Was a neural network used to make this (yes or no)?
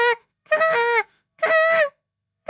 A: yes